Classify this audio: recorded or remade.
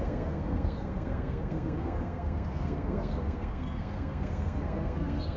remade